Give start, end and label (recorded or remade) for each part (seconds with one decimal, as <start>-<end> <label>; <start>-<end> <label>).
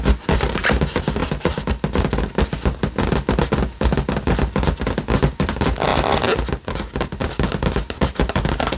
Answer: 0.0-8.8 recorded